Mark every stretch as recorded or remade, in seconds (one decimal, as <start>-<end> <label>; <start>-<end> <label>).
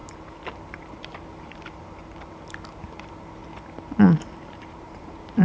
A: 0.0-2.0 remade; 2.0-2.8 recorded; 2.8-3.4 remade; 3.4-4.5 recorded; 4.5-5.4 remade